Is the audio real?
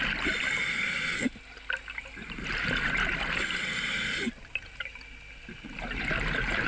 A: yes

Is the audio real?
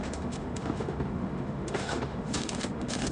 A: no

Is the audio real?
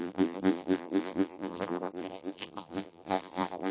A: no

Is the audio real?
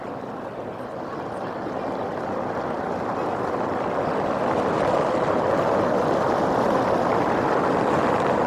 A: yes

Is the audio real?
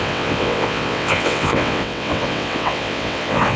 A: no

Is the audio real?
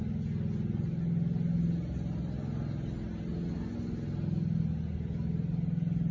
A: yes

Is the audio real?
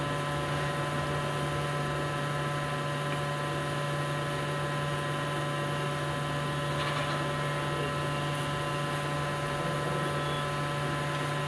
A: yes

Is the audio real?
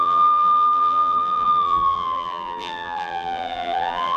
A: no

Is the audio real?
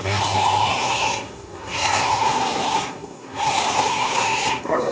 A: no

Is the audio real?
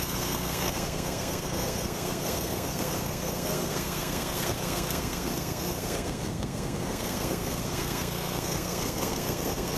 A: no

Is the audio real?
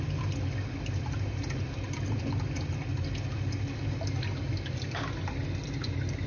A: yes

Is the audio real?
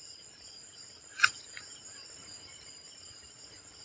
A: no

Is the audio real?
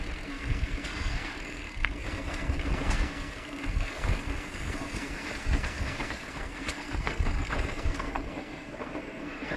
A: no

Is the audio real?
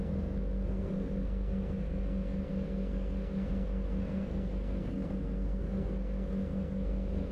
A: no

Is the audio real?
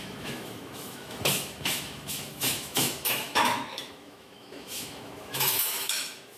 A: no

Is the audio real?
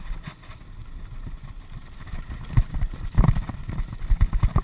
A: yes